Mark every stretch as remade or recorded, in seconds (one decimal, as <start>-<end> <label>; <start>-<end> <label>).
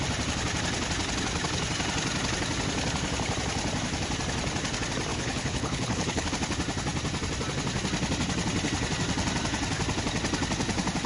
0.0-5.1 recorded; 5.1-6.3 remade; 6.3-11.1 recorded